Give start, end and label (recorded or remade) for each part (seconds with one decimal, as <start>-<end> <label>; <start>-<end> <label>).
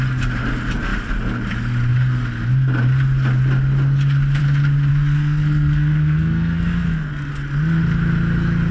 0.0-4.9 recorded; 4.9-7.3 remade; 7.3-8.7 recorded